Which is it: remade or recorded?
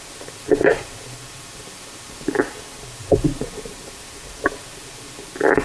recorded